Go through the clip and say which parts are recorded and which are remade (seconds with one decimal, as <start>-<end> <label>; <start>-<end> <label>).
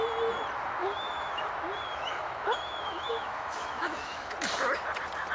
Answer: 0.0-0.8 recorded; 0.8-1.4 remade; 1.4-1.9 recorded; 1.9-4.3 remade; 4.3-5.3 recorded